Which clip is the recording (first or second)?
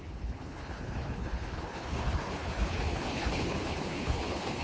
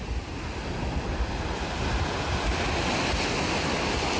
second